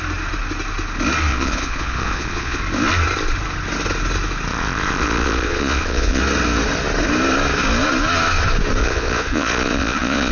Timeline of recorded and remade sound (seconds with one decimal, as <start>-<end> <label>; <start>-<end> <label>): 0.0-1.3 recorded; 1.3-2.6 remade; 2.6-4.5 recorded; 4.5-6.2 remade; 6.2-8.8 recorded; 8.8-10.3 remade